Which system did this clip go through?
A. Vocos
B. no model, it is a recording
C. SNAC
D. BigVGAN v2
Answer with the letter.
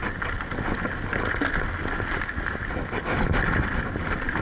B